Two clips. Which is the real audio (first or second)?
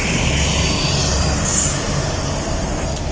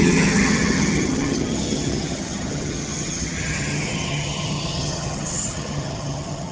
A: first